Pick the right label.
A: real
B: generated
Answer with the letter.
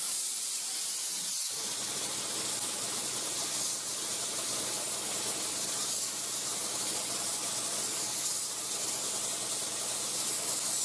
A